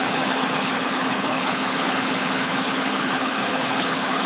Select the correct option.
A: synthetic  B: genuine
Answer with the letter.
A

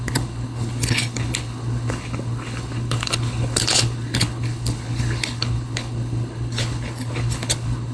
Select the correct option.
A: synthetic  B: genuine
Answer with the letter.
A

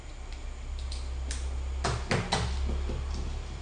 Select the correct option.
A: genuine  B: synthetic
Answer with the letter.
A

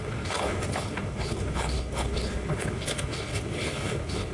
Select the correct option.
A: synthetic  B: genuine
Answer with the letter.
A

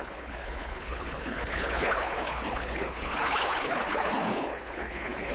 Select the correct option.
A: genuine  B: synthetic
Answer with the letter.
B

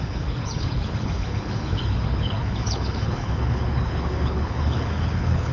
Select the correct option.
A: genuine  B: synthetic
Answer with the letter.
B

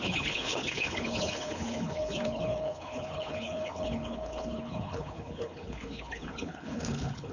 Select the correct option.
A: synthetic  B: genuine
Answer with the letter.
A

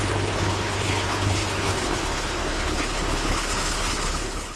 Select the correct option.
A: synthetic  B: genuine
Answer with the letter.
A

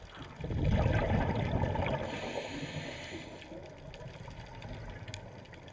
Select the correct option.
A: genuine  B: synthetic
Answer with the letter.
A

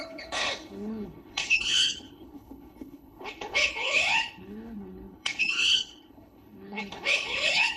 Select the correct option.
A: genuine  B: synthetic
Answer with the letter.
B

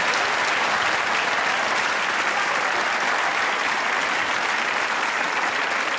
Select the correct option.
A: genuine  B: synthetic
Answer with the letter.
A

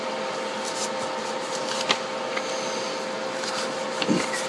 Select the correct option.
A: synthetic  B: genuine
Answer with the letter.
B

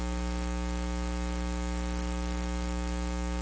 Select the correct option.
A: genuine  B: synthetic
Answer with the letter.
A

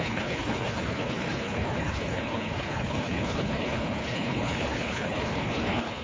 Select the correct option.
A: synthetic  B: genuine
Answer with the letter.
A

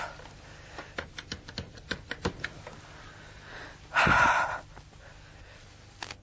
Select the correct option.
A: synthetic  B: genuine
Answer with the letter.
B